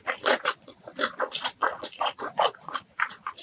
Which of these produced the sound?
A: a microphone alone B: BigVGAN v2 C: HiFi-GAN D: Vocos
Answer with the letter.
D